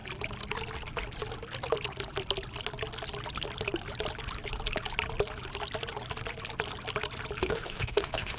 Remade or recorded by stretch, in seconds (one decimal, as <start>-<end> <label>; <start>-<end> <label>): 0.0-7.4 recorded; 7.4-8.4 remade